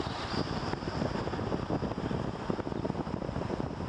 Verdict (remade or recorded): recorded